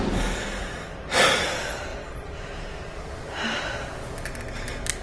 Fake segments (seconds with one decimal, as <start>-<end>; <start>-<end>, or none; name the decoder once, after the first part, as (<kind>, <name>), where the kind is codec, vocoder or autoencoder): none